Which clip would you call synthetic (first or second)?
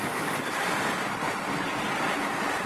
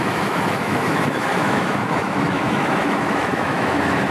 second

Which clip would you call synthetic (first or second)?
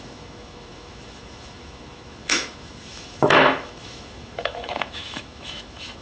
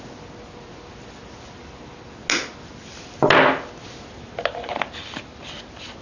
first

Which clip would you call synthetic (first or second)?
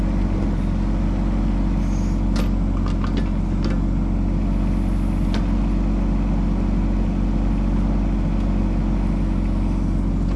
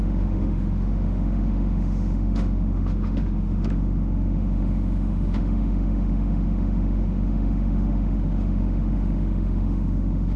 second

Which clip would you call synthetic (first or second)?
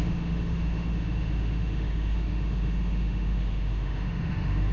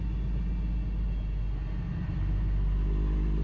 first